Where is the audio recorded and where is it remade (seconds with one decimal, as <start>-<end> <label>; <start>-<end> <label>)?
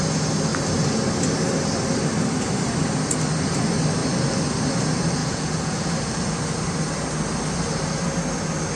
0.0-5.2 recorded; 5.2-5.9 remade; 5.9-8.8 recorded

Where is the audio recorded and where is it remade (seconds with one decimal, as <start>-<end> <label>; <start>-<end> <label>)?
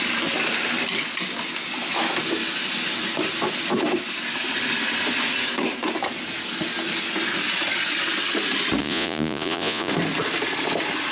0.0-8.8 recorded; 8.8-9.9 remade; 9.9-11.1 recorded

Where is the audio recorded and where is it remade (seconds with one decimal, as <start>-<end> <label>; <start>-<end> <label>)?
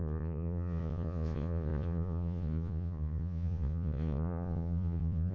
0.0-5.3 remade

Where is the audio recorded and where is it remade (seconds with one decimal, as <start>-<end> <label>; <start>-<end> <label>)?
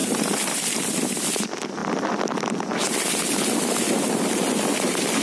0.0-5.2 recorded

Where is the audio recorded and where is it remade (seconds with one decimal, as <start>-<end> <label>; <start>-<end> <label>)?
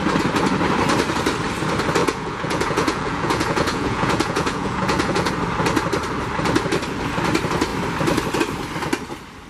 0.0-2.0 recorded; 2.0-5.3 remade; 5.3-9.5 recorded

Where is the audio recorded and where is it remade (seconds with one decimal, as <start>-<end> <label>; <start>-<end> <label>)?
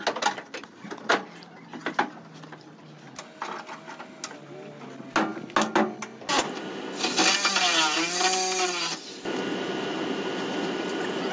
0.0-11.3 recorded